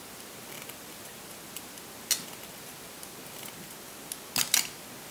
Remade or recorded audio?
recorded